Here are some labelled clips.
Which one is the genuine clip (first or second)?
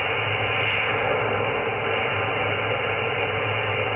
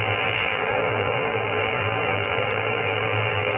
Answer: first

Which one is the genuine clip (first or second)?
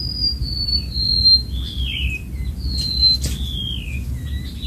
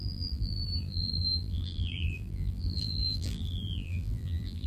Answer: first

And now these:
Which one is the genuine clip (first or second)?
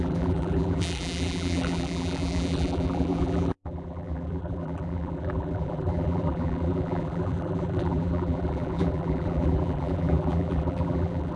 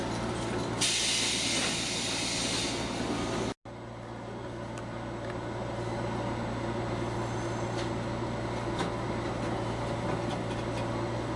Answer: second